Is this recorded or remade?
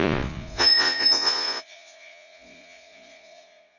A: remade